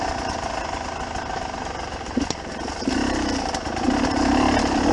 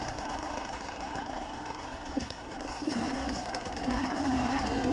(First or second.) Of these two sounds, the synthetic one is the second